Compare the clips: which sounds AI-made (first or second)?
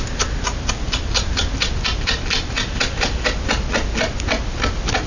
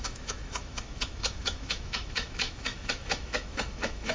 second